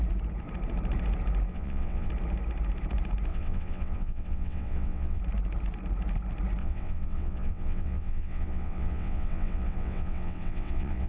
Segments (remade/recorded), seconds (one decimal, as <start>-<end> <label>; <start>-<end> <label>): 0.0-1.5 recorded; 1.5-2.1 remade; 2.1-3.3 recorded; 3.3-5.2 remade; 5.2-6.6 recorded; 6.6-11.1 remade